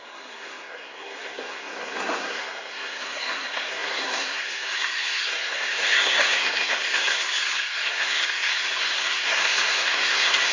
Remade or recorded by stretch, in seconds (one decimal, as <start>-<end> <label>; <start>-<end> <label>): 0.0-10.5 remade